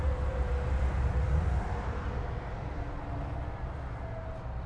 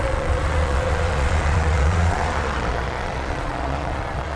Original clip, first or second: first